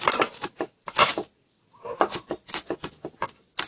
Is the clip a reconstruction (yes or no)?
no